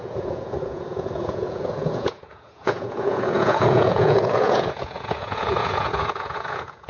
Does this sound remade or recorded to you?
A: remade